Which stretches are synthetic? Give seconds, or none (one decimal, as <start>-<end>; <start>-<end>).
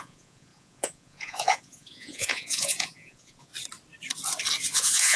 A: 0.0-3.5; 4.7-5.2